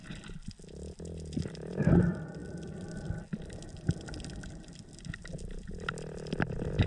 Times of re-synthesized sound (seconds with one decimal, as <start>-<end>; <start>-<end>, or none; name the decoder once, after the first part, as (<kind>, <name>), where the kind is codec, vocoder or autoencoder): none